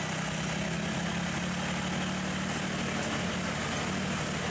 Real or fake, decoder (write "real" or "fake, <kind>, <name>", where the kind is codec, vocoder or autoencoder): real